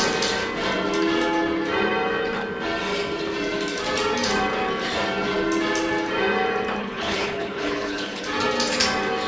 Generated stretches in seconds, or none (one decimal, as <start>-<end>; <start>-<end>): 6.8-8.2